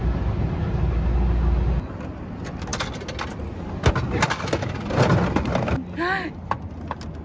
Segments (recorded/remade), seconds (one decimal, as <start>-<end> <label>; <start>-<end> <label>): 0.0-7.2 recorded